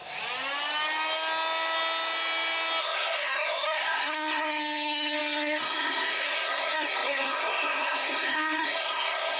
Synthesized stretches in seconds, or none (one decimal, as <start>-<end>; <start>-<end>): 2.8-9.4